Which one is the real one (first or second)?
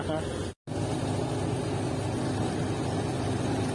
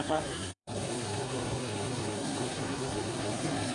first